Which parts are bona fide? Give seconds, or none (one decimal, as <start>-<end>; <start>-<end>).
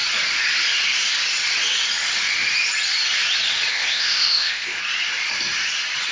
0.0-3.7; 4.8-6.1